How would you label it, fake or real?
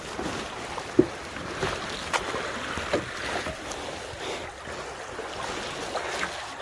real